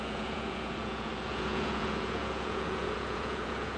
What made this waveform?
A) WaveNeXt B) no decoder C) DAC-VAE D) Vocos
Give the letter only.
D